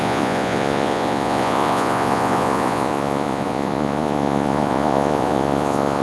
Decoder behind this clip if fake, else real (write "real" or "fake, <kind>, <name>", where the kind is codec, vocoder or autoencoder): fake, vocoder, Vocos